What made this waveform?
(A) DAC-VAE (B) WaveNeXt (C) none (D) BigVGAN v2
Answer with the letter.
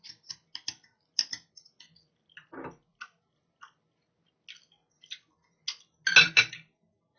C